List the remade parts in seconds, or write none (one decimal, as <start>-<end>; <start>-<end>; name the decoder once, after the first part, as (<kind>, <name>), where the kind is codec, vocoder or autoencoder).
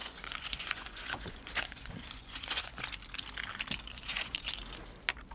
0.0-2.8 (vocoder, Vocos); 3.9-4.5